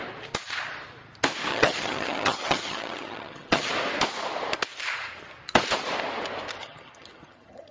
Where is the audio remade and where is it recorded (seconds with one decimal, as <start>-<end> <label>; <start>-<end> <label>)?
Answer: 0.0-1.5 recorded; 1.5-3.7 remade; 3.7-6.6 recorded; 6.6-7.7 remade